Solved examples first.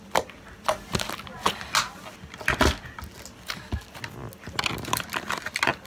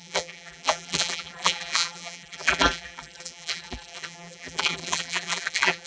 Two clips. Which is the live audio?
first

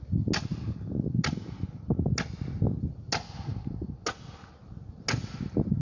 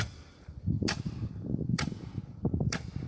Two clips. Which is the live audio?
first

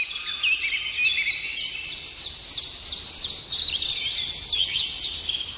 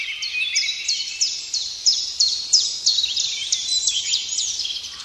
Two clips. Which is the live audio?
first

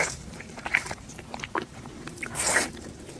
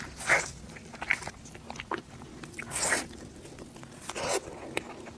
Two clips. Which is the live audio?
second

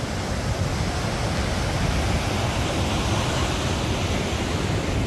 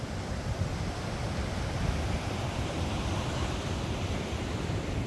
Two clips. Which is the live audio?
first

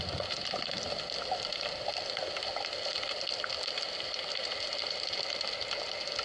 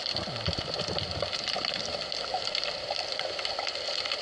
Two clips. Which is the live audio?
first